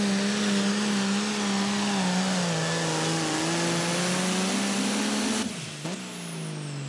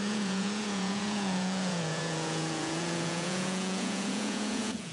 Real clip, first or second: first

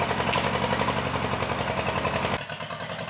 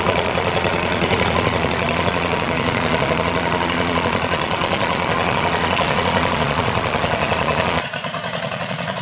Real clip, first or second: first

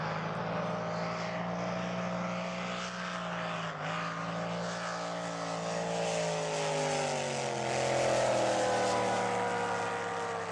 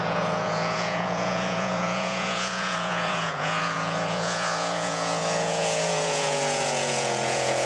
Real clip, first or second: first